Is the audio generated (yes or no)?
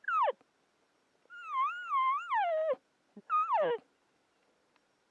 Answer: no